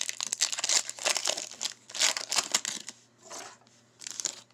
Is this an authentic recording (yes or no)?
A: yes